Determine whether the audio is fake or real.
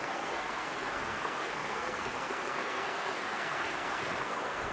fake